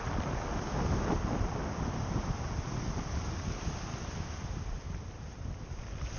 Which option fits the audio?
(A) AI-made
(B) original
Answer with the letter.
B